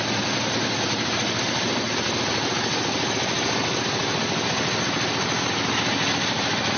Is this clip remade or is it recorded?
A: recorded